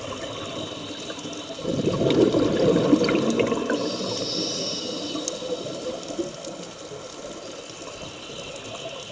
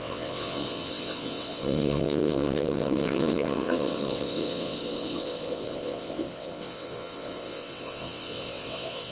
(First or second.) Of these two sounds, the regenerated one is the second